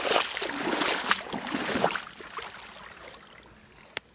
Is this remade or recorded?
recorded